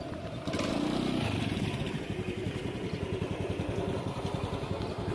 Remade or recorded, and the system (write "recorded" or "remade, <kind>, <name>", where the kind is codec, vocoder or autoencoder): recorded